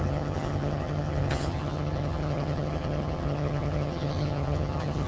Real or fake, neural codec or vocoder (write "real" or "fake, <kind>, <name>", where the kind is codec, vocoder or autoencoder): fake, vocoder, HiFi-GAN